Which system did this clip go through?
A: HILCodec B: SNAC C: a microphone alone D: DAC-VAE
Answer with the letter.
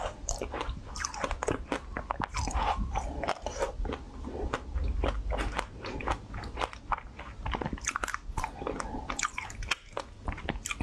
C